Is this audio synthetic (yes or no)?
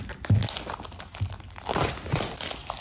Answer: no